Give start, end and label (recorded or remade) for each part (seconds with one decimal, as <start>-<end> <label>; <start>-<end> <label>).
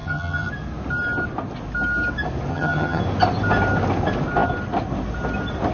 0.0-0.5 remade; 0.5-2.5 recorded; 2.5-3.0 remade; 3.0-5.7 recorded